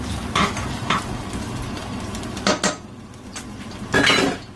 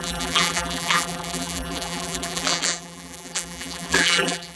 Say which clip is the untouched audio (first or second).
first